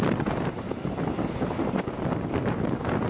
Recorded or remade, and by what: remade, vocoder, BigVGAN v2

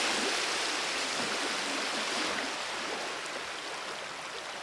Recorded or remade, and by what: recorded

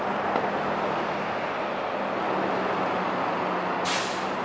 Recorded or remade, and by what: recorded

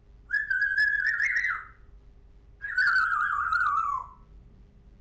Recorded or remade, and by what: recorded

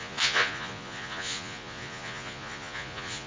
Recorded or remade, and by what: remade, vocoder, Vocos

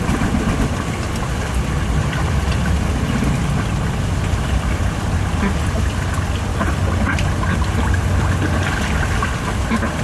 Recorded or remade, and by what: recorded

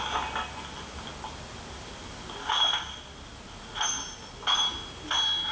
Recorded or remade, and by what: recorded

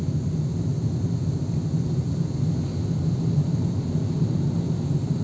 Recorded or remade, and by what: recorded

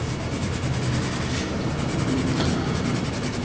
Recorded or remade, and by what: recorded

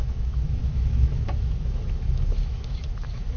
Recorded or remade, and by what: remade, autoencoder, DAC-VAE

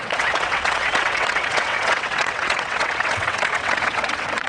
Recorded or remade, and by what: remade, vocoder, WaveNeXt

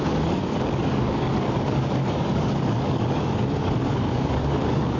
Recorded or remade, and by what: remade, codec, DAC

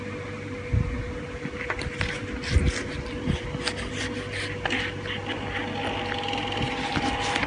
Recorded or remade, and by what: recorded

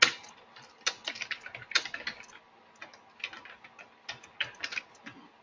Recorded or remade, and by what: recorded